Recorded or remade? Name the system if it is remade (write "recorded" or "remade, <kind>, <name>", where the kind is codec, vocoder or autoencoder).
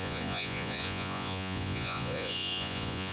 remade, vocoder, Vocos